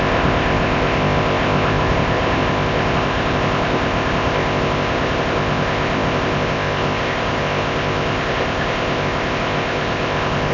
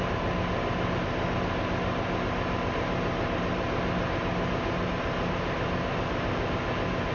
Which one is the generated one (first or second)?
first